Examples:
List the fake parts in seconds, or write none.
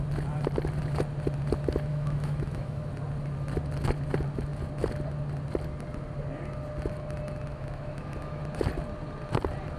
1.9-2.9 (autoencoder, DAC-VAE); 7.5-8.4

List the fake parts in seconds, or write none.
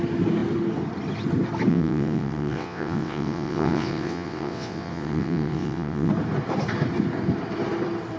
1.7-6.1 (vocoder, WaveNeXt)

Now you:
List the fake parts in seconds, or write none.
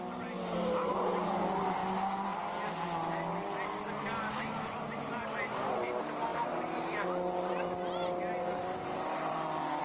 6.3-9.8 (vocoder, BigVGAN v2)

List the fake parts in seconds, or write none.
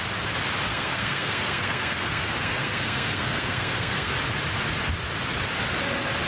0.7-4.1 (codec, SNAC)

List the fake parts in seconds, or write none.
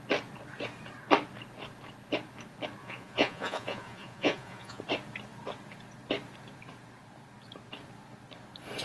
2.8-4.8 (vocoder, Vocos)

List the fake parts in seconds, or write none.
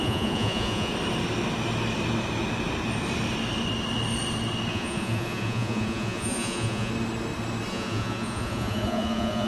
0.0-0.9 (vocoder, Vocos); 4.7-6.9; 7.7-9.5